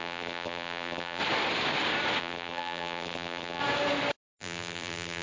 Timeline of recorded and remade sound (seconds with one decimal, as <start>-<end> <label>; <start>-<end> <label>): 0.0-1.2 remade; 1.2-2.2 recorded; 2.2-3.6 remade; 3.6-4.4 recorded; 4.4-5.2 remade